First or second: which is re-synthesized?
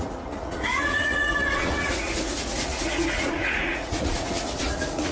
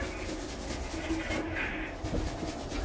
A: first